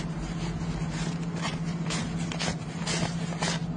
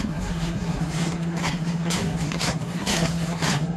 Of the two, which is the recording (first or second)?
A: first